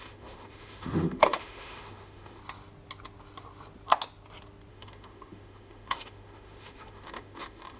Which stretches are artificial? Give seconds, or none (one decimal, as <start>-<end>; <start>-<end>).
0.0-2.4; 4.7-7.8